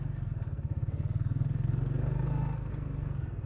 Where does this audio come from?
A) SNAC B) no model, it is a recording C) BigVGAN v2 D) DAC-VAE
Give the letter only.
A